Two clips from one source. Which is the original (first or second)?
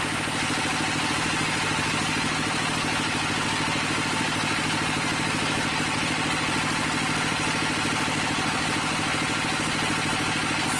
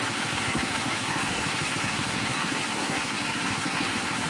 first